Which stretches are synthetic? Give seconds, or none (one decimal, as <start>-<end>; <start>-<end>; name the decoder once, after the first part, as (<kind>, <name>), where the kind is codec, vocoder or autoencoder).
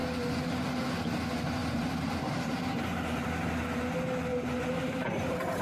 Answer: 1.6-3.6 (vocoder, BigVGAN v2); 4.3-5.6